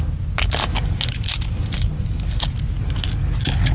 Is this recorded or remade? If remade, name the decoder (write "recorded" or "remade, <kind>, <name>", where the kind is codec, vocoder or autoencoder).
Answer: recorded